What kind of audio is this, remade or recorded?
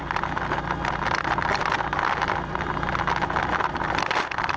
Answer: recorded